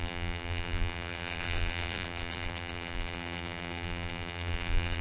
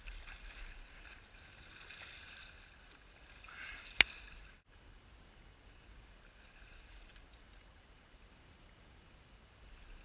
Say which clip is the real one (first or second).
second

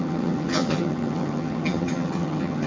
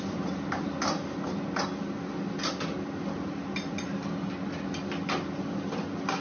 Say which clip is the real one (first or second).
second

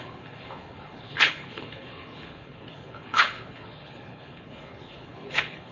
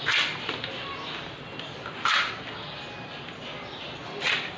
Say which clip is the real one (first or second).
second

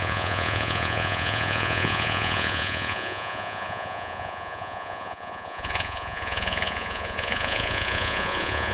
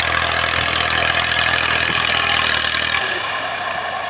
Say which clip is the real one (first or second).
second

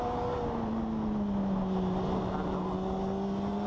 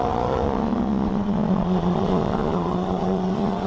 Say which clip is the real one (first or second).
first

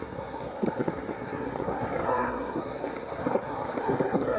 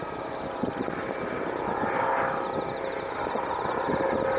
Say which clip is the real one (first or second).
second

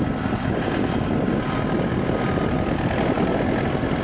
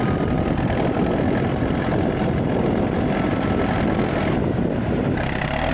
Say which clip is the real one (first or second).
first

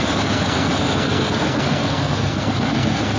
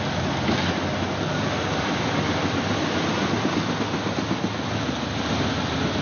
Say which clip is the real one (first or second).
second